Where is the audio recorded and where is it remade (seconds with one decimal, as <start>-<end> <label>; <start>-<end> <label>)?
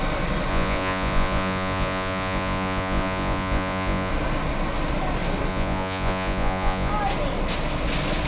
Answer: 0.0-0.5 recorded; 0.5-4.1 remade; 4.1-5.5 recorded; 5.5-6.9 remade; 6.9-8.3 recorded